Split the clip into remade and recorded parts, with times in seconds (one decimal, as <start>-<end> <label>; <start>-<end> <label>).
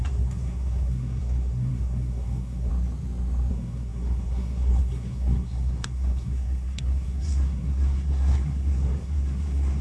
0.0-2.7 remade; 2.7-3.5 recorded; 3.5-9.8 remade